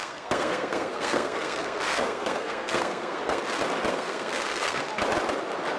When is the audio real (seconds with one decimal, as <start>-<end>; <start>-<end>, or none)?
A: 3.4-3.9; 4.8-5.8